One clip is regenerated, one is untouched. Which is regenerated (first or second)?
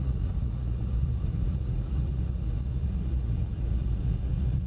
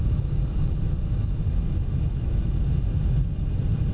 first